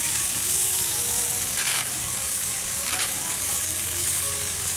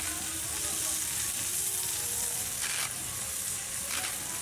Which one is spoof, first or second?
first